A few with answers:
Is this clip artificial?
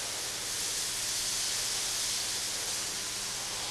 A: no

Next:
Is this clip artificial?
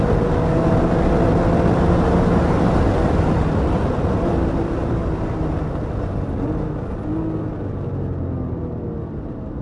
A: no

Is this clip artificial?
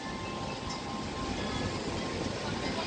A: no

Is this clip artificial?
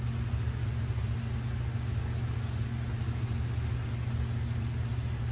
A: no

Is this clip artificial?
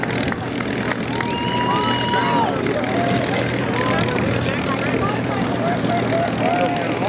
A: no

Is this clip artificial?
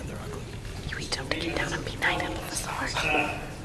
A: no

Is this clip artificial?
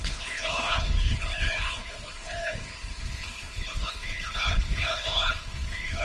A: yes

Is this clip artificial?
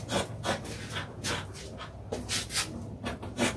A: no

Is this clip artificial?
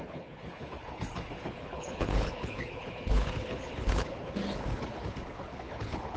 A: yes